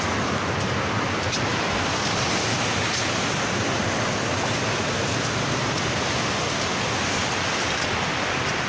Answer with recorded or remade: recorded